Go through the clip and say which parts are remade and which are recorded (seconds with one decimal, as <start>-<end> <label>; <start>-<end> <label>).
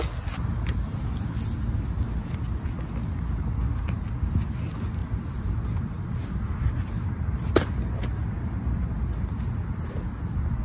0.0-5.0 recorded; 5.0-9.3 remade; 9.3-10.6 recorded